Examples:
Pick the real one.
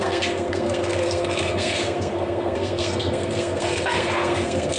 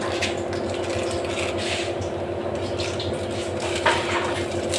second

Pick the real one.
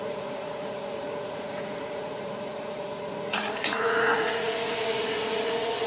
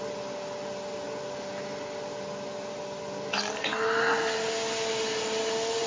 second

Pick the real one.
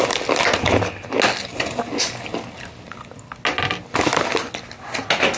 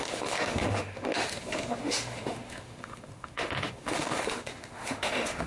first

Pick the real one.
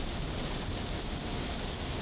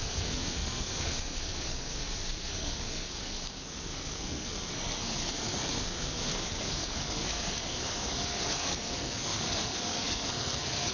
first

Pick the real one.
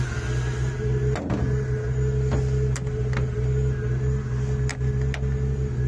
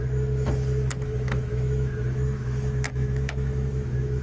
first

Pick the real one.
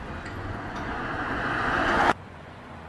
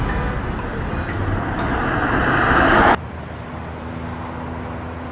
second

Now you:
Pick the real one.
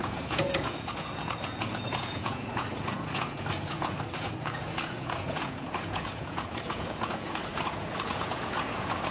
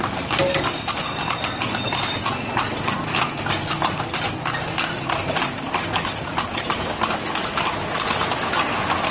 second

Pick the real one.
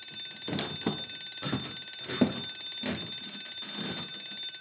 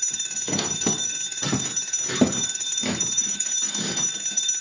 first